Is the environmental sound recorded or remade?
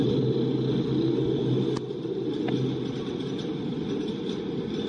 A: recorded